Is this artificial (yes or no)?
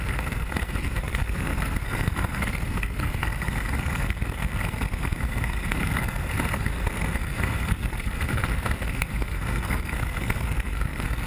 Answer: yes